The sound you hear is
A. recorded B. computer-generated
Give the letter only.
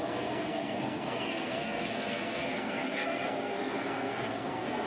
B